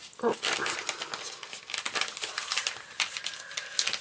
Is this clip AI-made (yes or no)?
no